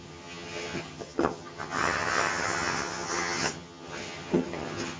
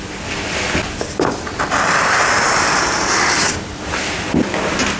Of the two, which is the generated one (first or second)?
first